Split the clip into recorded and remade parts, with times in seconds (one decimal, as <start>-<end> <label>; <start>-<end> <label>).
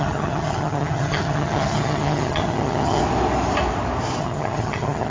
0.0-3.0 remade; 3.0-4.2 recorded; 4.2-5.1 remade